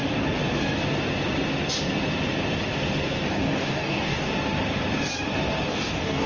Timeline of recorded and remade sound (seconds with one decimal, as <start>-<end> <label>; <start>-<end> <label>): 0.0-3.3 recorded; 3.3-4.3 remade; 4.3-5.7 recorded; 5.7-6.3 remade